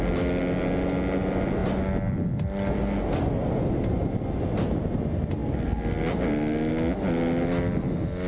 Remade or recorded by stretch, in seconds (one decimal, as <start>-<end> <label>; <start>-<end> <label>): 0.0-8.3 recorded